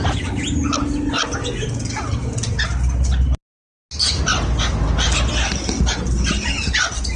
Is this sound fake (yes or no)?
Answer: no